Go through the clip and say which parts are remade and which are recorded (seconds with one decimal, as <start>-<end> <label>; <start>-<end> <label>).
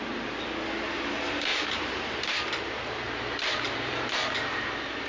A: 0.0-1.5 recorded; 1.5-4.6 remade; 4.6-5.1 recorded